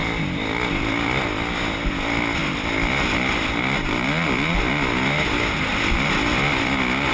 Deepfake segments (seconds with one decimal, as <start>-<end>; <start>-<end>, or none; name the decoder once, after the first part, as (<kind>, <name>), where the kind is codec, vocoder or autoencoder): none